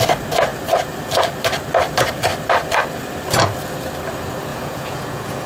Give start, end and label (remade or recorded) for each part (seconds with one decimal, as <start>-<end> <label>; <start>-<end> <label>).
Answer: 0.0-4.5 recorded; 4.5-5.5 remade